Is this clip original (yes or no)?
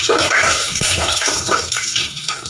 no